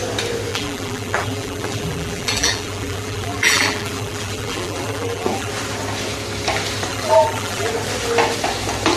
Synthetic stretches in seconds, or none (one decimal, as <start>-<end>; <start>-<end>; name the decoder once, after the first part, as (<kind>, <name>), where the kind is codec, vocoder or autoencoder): 0.5-5.5 (vocoder, BigVGAN v2); 6.9-7.7